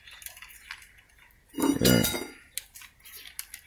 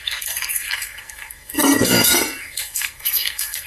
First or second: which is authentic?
first